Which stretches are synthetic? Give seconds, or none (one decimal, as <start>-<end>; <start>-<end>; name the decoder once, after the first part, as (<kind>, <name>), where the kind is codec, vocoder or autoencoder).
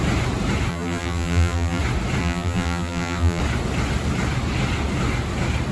0.7-1.8 (vocoder, BigVGAN v2); 2.2-3.4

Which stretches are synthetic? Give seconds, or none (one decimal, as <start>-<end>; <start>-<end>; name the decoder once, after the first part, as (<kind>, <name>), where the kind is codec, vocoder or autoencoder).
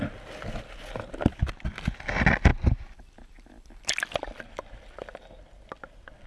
none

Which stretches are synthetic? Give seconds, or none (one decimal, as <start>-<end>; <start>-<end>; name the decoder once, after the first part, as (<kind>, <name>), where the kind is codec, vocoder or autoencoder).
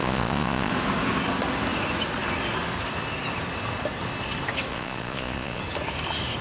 0.0-0.7 (vocoder, Vocos); 4.7-5.6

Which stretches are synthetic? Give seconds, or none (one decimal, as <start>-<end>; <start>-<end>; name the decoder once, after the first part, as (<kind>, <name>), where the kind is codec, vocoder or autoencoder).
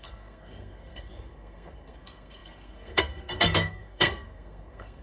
0.0-5.0 (codec, SNAC)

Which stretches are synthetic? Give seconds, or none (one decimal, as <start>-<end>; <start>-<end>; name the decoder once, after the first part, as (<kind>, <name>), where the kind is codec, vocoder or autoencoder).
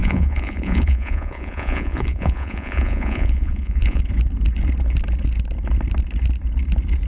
0.0-4.0 (vocoder, Vocos)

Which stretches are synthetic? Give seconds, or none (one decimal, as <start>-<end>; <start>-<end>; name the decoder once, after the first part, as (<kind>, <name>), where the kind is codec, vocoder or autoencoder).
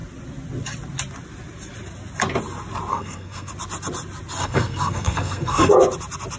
2.9-3.5 (codec, SNAC); 4.4-5.7